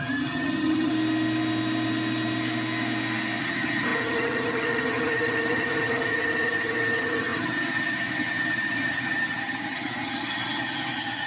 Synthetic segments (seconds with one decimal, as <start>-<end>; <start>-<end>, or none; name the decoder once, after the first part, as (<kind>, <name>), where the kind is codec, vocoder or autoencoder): 0.0-0.9 (vocoder, HiFi-GAN); 3.4-11.3